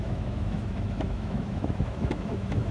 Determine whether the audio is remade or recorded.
remade